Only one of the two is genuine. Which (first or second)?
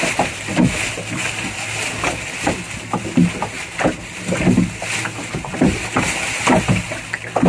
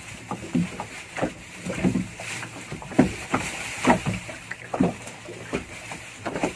first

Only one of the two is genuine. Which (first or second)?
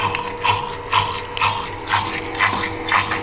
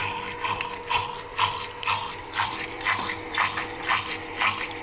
first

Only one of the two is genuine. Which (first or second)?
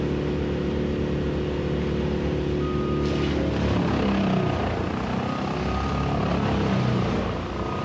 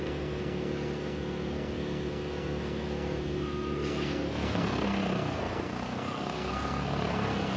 first